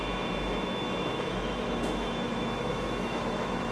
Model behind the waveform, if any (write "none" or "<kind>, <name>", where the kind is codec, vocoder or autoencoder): autoencoder, DAC-VAE